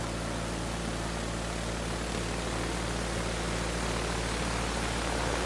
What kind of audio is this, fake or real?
real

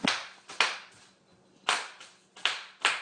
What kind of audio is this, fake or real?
real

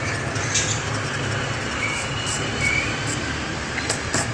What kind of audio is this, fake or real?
fake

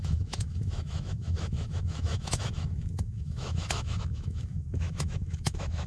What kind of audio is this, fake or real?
fake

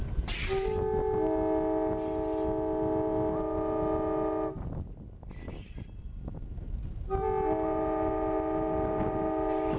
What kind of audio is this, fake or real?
real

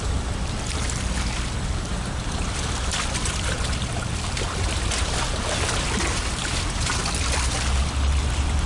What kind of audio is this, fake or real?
real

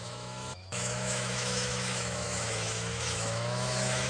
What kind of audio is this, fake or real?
fake